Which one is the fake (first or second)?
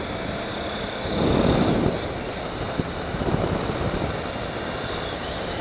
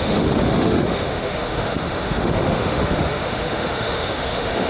second